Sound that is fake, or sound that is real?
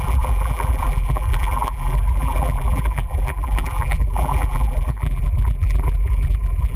fake